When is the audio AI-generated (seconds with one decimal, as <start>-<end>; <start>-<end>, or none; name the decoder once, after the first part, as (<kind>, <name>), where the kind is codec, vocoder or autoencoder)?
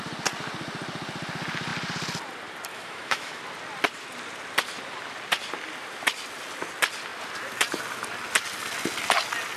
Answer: 2.7-3.4 (autoencoder, DAC-VAE)